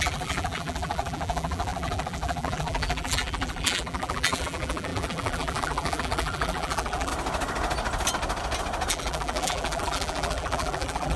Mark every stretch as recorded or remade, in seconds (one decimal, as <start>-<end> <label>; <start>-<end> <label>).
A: 0.0-7.1 remade; 7.1-8.9 recorded; 8.9-11.2 remade